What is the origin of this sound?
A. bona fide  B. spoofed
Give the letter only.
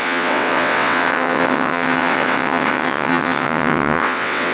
B